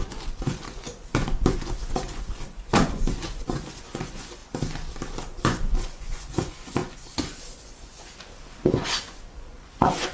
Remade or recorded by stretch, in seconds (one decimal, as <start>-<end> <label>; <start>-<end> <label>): 0.0-4.4 remade; 4.4-5.4 recorded; 5.4-10.1 remade